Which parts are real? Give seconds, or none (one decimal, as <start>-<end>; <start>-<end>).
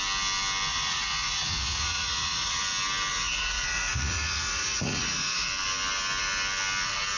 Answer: 0.0-0.7; 2.6-3.1; 5.5-7.2